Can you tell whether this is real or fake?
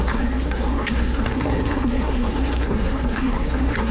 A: fake